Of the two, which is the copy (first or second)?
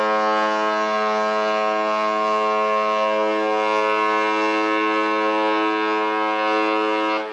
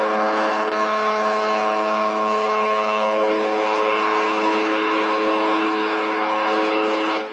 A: second